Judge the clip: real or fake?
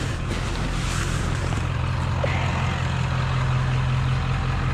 real